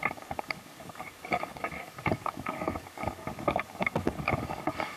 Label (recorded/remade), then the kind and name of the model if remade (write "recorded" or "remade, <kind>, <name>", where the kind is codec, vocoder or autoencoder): remade, codec, DAC